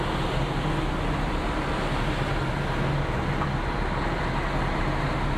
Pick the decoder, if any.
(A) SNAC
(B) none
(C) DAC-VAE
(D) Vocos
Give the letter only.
B